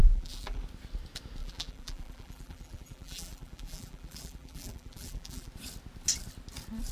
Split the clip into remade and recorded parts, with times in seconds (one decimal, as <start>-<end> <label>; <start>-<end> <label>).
0.0-0.6 remade; 0.6-1.4 recorded; 1.4-5.5 remade; 5.5-6.9 recorded